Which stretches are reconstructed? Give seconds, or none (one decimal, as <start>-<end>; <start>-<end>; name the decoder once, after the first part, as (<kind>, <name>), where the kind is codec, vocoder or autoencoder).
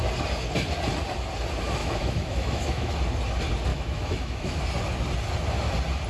1.8-3.0 (autoencoder, DAC-VAE); 3.7-4.6